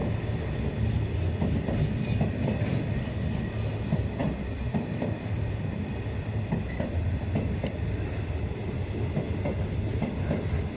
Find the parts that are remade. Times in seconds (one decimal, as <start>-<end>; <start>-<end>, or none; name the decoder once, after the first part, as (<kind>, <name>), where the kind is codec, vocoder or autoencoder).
none